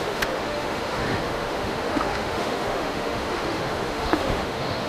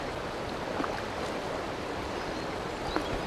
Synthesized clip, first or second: first